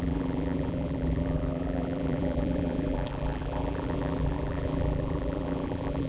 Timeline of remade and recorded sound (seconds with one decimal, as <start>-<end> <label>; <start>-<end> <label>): 0.0-6.1 remade

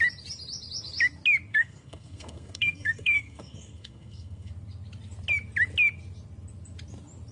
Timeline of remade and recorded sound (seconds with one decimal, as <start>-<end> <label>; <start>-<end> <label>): 0.0-1.5 recorded; 1.5-4.5 remade; 4.5-7.3 recorded

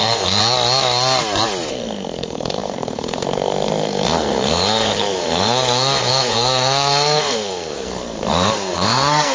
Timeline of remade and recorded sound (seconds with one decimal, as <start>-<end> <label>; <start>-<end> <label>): 0.0-0.4 remade; 0.4-1.7 recorded; 1.7-9.3 remade

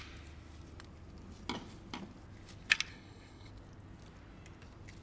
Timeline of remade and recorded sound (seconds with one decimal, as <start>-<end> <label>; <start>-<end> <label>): 0.0-2.9 recorded; 2.9-3.5 remade; 3.5-5.0 recorded

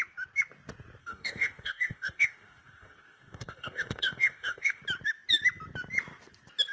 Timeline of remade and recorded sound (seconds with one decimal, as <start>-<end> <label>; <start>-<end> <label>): 0.0-1.0 recorded; 1.0-4.8 remade; 4.8-6.7 recorded

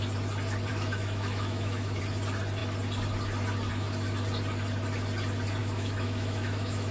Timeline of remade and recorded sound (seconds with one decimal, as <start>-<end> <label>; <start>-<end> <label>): 0.0-0.7 recorded; 0.7-2.0 remade; 2.0-5.6 recorded; 5.6-6.9 remade

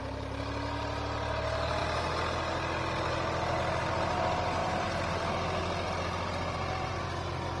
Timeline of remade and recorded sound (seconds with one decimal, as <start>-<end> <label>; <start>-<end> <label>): 0.0-4.6 recorded; 4.6-5.6 remade; 5.6-7.6 recorded